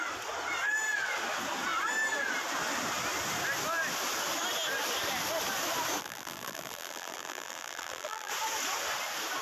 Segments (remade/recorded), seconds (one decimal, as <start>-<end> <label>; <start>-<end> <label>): 0.0-6.0 recorded; 6.0-8.3 remade; 8.3-9.4 recorded